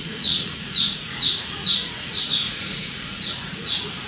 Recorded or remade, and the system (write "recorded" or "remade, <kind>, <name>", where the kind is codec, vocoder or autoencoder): remade, vocoder, Vocos